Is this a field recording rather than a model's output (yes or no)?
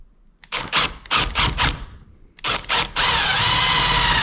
yes